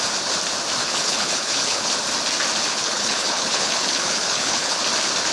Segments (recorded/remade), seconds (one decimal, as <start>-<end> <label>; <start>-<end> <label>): 0.0-0.8 recorded; 0.8-1.9 remade; 1.9-2.6 recorded; 2.6-4.8 remade; 4.8-5.3 recorded